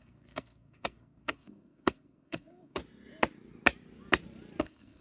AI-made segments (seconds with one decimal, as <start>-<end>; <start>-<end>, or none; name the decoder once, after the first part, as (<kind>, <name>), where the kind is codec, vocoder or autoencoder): 0.0-2.8 (codec, SNAC); 4.6-5.0